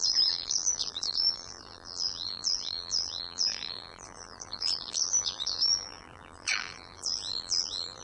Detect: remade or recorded remade